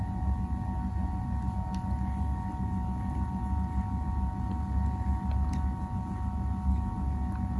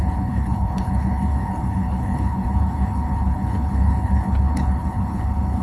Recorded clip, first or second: first